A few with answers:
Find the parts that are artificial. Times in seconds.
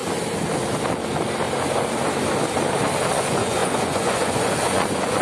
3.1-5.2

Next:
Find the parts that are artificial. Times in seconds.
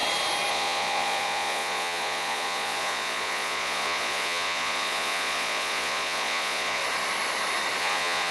0.5-6.8; 7.8-8.3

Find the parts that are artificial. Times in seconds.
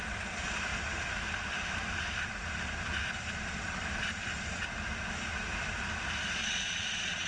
6.4-7.3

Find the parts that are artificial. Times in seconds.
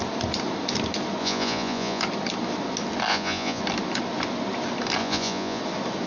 1.2-2.0; 3.1-3.6; 5.0-5.6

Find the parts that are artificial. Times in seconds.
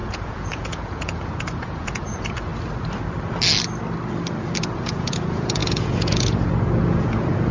0.0-2.5; 4.6-7.5